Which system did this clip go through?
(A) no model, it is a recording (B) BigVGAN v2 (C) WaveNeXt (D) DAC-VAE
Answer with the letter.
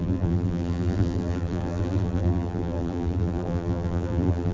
B